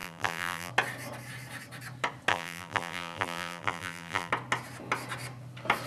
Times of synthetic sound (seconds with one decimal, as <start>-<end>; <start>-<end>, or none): 0.0-0.7; 2.3-4.3